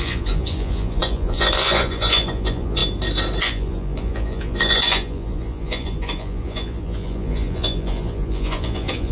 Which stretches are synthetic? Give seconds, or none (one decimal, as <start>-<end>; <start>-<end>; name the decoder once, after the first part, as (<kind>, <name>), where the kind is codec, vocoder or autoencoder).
0.0-2.8 (vocoder, Vocos); 3.4-9.1

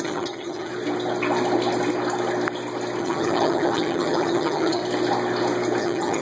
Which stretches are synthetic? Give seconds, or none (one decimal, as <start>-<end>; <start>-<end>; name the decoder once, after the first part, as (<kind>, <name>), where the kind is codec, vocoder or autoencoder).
0.0-0.7 (vocoder, HiFi-GAN); 3.0-4.8; 5.8-6.2

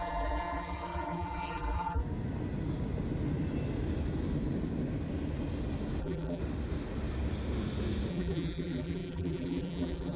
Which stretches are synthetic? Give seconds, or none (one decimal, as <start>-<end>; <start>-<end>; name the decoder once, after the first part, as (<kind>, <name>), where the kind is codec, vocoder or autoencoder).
0.0-2.0 (vocoder, BigVGAN v2); 6.0-6.4; 8.1-10.2

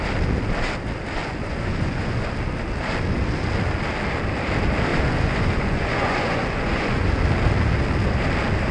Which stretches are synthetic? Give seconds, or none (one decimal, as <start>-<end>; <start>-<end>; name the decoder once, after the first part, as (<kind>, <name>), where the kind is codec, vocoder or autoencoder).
1.2-2.3 (vocoder, Vocos); 4.9-7.1

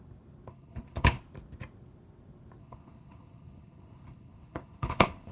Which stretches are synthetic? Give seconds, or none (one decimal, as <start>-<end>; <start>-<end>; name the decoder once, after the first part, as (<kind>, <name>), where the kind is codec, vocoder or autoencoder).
0.5-1.2 (codec, HILCodec); 2.6-5.3